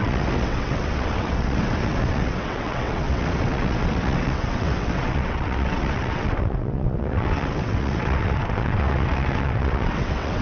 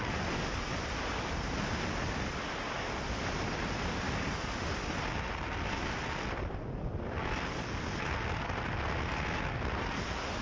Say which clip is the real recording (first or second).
second